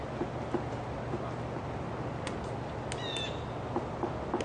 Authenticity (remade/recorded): recorded